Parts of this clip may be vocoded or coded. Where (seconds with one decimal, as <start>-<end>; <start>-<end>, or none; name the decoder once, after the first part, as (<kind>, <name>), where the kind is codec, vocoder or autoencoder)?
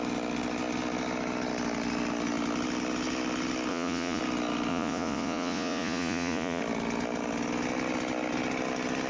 3.7-4.2 (vocoder, Vocos); 4.7-6.6